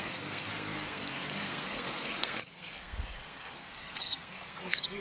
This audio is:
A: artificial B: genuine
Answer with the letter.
A